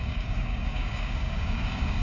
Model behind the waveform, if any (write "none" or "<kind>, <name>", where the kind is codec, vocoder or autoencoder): codec, DAC